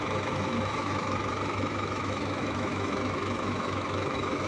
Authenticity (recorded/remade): remade